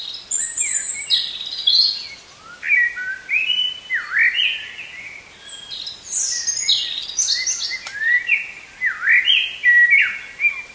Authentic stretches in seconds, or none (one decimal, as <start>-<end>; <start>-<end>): 0.0-10.7